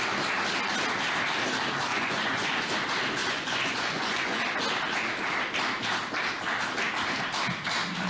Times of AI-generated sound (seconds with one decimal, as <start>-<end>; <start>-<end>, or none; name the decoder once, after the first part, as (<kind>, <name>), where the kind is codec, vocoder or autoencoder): 1.9-2.6 (vocoder, Vocos); 3.2-4.4